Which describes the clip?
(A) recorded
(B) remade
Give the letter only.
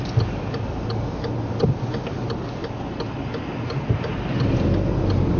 A